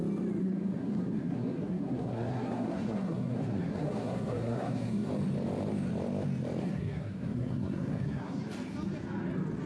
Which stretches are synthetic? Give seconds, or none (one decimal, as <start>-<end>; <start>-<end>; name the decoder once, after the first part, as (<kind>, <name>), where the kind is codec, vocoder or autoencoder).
0.4-5.1 (codec, SNAC); 6.6-8.4